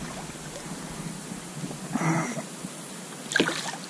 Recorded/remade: recorded